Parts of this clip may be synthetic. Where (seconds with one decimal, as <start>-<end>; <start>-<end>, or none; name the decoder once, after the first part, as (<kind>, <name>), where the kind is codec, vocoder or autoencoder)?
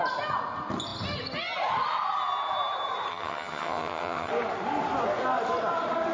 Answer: 3.1-4.3 (vocoder, HiFi-GAN)